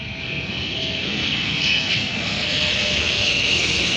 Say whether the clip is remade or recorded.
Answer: remade